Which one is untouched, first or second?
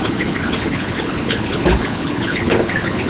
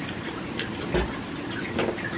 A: second